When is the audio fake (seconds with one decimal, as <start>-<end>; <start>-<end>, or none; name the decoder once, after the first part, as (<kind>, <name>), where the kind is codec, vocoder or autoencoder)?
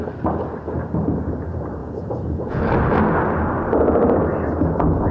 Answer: 1.8-2.6 (vocoder, Vocos)